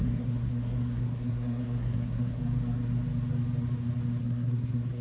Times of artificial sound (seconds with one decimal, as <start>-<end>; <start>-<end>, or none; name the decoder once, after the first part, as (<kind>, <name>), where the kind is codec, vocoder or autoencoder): 0.0-2.4 (codec, SNAC); 4.2-5.0